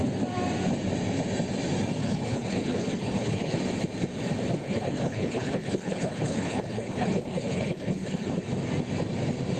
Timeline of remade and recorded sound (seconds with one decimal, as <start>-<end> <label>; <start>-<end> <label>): 0.0-2.0 recorded; 2.0-3.6 remade; 3.6-4.6 recorded; 4.6-8.3 remade; 8.3-9.6 recorded